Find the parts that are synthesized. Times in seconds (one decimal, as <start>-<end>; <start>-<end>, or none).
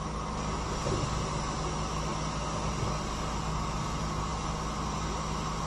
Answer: none